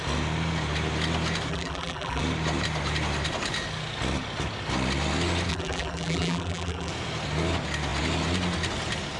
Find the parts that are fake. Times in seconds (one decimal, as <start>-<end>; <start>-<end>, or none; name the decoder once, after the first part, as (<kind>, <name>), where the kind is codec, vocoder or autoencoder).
1.5-2.2 (vocoder, BigVGAN v2); 5.5-6.9